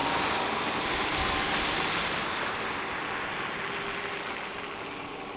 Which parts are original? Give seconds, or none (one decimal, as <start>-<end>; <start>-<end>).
0.0-5.4